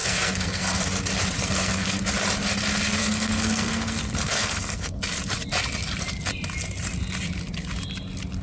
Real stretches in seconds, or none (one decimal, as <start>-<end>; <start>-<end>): 0.8-1.4; 2.0-3.0; 5.0-8.4